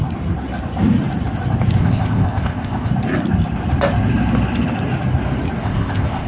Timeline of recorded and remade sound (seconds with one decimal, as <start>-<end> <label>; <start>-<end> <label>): 0.0-1.8 recorded; 1.8-2.9 remade; 2.9-5.6 recorded; 5.6-6.3 remade